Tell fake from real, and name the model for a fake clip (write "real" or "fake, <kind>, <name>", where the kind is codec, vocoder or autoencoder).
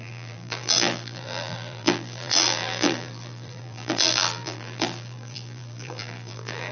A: fake, vocoder, BigVGAN v2